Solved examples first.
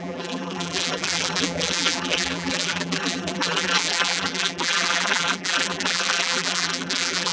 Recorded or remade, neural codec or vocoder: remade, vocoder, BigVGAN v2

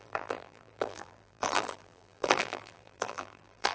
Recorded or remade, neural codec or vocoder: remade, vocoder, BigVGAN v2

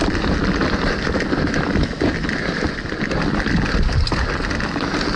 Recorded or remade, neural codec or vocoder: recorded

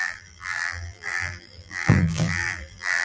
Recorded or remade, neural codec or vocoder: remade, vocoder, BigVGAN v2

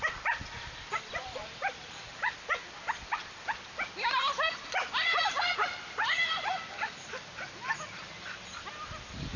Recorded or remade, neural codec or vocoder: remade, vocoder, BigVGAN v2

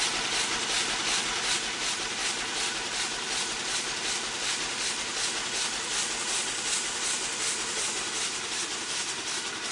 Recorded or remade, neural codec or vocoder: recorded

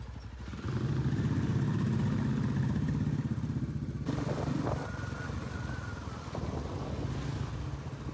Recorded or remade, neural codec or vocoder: recorded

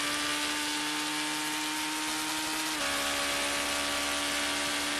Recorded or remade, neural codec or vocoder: recorded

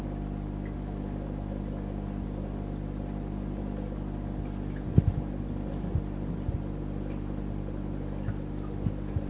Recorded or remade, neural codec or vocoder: recorded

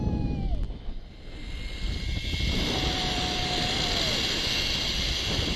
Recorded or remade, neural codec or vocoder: recorded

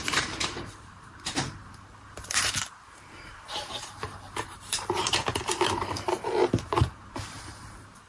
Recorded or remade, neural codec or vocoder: remade, vocoder, BigVGAN v2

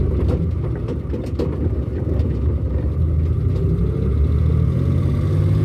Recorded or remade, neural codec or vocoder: recorded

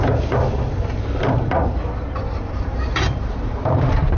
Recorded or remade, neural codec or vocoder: remade, vocoder, BigVGAN v2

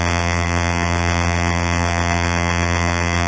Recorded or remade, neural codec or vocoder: remade, vocoder, BigVGAN v2